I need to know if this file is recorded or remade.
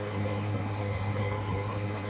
remade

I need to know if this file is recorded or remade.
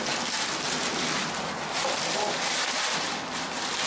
recorded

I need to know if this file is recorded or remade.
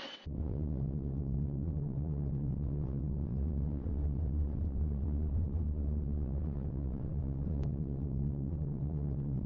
remade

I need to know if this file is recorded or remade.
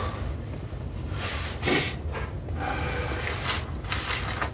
recorded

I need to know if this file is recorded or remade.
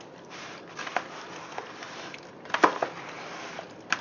recorded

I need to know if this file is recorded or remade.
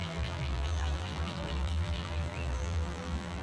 remade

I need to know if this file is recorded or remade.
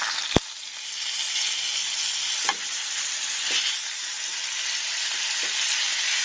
recorded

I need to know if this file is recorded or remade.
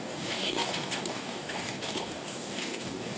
remade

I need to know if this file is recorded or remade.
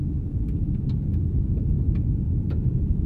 recorded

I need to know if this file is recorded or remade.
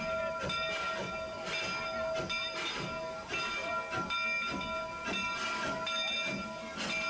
recorded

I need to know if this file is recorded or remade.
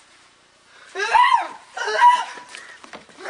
remade